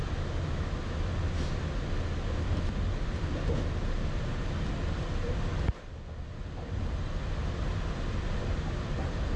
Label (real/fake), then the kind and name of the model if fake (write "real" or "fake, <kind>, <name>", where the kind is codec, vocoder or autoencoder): real